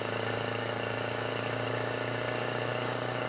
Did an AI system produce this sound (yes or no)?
yes